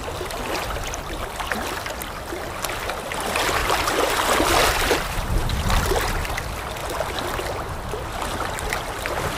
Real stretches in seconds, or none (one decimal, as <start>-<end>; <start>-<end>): 0.0-3.6; 4.1-4.6; 5.4-9.4